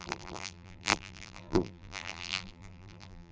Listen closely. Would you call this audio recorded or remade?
remade